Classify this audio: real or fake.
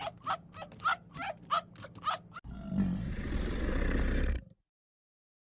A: real